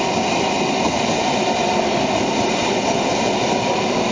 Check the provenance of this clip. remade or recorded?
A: recorded